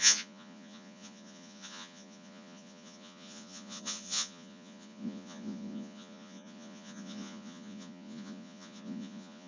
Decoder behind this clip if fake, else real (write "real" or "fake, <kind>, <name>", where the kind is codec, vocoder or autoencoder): fake, vocoder, Vocos